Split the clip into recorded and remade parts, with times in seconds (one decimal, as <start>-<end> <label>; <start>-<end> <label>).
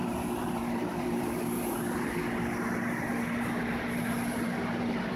0.0-2.2 remade; 2.2-3.6 recorded; 3.6-5.2 remade